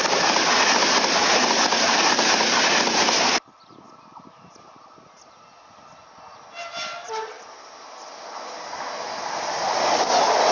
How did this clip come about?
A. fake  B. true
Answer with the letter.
B